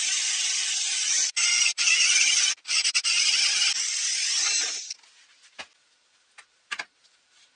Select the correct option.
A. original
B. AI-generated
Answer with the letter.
A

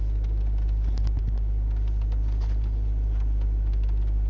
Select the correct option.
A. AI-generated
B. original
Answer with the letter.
B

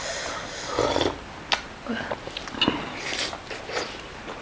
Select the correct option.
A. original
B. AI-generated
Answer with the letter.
A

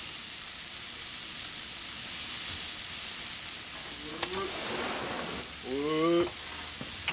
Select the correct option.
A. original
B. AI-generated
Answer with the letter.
A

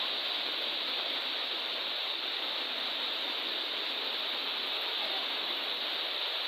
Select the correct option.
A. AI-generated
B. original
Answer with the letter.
B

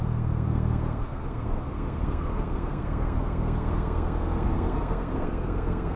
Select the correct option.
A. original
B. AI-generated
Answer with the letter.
B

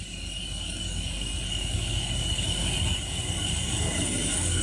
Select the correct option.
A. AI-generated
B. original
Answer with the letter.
A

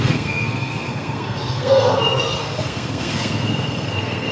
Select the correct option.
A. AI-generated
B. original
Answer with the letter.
A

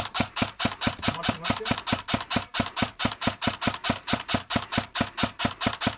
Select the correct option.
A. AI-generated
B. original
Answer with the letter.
A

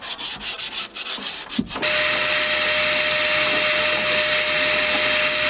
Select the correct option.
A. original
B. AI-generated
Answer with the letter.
A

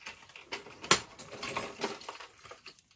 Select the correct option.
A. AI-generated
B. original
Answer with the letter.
B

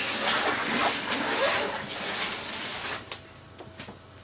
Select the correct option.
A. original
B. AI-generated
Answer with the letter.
A